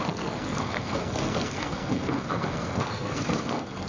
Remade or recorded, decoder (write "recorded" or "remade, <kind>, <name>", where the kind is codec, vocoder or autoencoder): remade, codec, SNAC